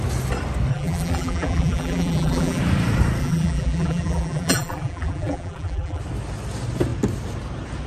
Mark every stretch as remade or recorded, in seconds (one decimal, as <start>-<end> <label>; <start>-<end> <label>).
0.0-0.7 recorded; 0.7-2.6 remade; 2.6-3.2 recorded; 3.2-6.0 remade; 6.0-7.9 recorded